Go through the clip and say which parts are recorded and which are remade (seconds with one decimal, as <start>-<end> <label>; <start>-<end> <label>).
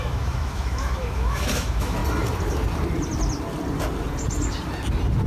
0.0-2.0 remade; 2.0-5.3 recorded